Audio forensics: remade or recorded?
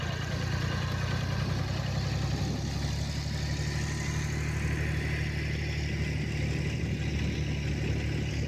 recorded